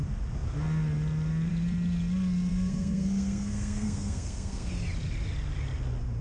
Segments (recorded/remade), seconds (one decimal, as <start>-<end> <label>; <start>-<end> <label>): 0.0-2.5 recorded; 2.5-4.7 remade; 4.7-6.2 recorded